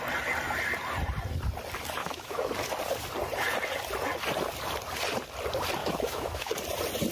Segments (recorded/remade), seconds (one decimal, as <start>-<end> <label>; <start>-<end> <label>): 0.0-2.0 recorded; 2.0-2.5 remade; 2.5-5.8 recorded; 5.8-6.5 remade; 6.5-7.1 recorded